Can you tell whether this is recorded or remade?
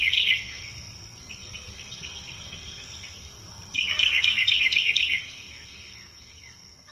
remade